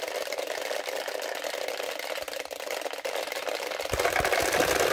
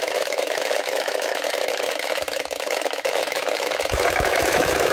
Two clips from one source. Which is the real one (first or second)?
first